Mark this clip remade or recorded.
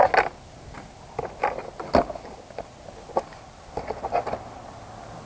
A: recorded